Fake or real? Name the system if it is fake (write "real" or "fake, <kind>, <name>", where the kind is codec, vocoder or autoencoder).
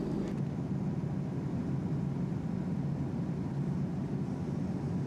real